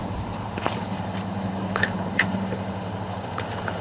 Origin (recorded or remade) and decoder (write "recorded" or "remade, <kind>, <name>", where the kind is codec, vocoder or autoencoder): remade, vocoder, BigVGAN v2